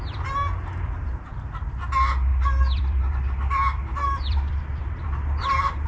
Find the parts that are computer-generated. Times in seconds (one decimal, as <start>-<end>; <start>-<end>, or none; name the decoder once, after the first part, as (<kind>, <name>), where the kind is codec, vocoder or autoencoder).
2.3-5.9 (vocoder, BigVGAN v2)